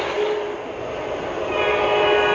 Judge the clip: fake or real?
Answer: real